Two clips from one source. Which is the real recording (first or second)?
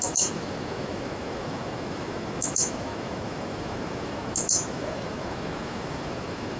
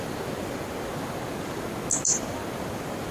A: second